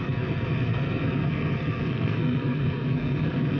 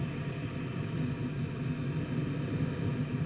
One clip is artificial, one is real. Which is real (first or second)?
second